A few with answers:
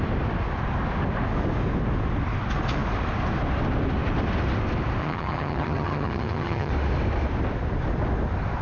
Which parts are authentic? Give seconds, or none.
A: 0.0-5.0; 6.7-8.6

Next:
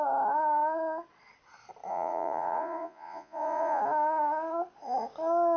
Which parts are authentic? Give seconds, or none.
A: 0.0-1.9; 3.8-5.6